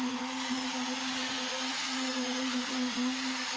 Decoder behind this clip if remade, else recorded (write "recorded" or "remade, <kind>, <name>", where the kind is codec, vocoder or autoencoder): remade, vocoder, Vocos